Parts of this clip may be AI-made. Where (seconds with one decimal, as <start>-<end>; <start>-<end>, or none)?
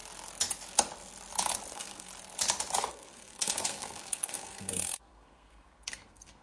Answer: 1.7-2.1; 2.9-6.4